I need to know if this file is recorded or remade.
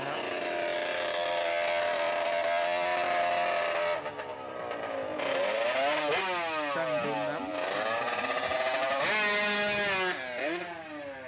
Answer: recorded